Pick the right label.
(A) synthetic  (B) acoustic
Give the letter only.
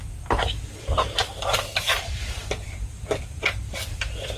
A